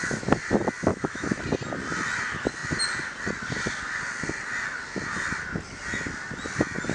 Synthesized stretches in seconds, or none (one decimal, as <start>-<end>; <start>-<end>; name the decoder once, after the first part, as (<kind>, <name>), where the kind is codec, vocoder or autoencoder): 0.9-1.4 (autoencoder, DAC-VAE)

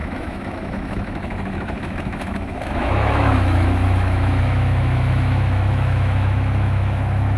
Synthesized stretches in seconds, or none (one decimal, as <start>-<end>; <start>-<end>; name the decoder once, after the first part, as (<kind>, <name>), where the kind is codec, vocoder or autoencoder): 0.0-7.4 (autoencoder, DAC-VAE)

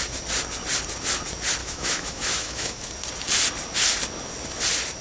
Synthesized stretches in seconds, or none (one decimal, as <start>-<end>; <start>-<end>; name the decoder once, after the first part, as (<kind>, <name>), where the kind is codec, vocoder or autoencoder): 1.6-2.9 (autoencoder, DAC-VAE)

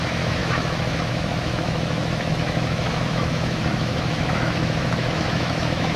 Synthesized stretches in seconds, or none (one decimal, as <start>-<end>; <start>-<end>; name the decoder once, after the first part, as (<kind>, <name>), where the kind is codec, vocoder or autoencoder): 0.0-6.0 (autoencoder, DAC-VAE)

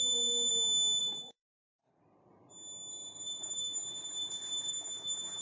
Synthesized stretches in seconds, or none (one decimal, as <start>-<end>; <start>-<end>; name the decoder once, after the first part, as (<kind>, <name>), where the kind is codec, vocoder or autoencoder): 0.0-0.5 (autoencoder, DAC-VAE); 1.0-1.8; 3.4-3.8; 4.7-5.4